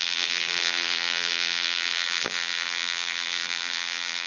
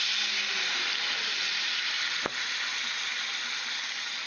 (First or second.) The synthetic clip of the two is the first